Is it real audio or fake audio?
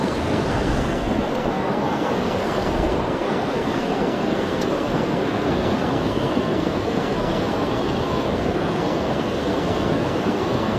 fake